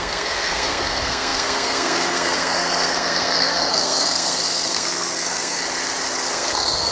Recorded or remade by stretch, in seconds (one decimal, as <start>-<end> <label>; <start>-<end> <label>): 0.0-5.6 remade; 5.6-6.3 recorded; 6.3-6.9 remade